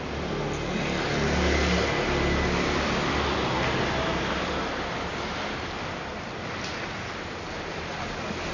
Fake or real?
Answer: real